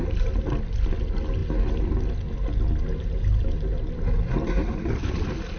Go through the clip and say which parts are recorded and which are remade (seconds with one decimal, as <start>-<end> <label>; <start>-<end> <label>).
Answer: 0.0-5.6 recorded